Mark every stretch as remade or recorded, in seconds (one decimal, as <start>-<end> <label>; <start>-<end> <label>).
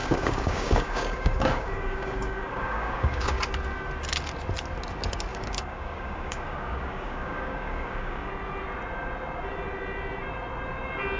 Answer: 0.0-3.4 remade; 3.4-5.3 recorded; 5.3-8.3 remade; 8.3-11.2 recorded